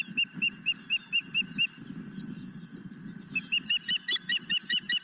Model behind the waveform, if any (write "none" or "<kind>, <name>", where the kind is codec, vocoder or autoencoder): none